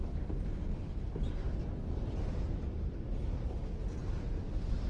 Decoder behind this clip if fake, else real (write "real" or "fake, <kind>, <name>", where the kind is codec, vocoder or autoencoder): real